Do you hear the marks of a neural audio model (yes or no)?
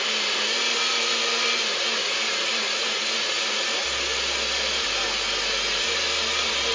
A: no